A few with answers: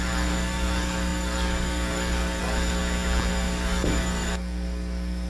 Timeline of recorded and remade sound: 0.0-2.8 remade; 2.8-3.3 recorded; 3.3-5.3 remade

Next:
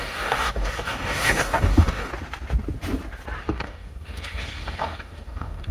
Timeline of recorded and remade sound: 0.0-2.1 remade; 2.1-3.4 recorded; 3.4-5.7 remade